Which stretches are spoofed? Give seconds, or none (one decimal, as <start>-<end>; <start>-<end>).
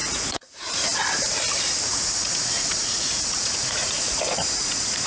0.0-1.0; 1.9-5.1